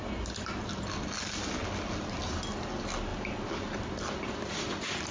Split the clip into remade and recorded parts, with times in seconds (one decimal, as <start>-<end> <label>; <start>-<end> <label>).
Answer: 0.0-5.1 recorded